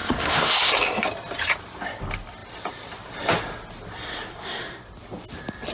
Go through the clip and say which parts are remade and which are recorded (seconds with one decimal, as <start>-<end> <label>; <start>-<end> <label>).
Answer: 0.0-0.7 remade; 0.7-4.3 recorded; 4.3-4.8 remade; 4.8-5.7 recorded